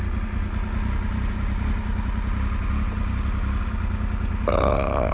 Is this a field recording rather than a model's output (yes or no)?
yes